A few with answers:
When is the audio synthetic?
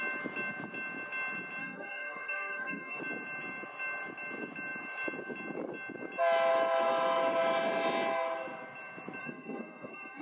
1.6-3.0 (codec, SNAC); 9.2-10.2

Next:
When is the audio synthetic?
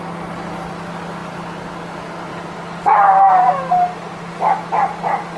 none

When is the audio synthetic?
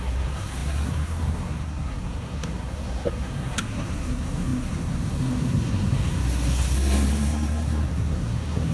0.0-8.7 (codec, SNAC)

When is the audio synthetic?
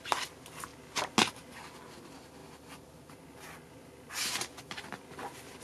none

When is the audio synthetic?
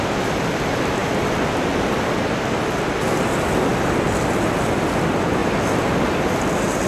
none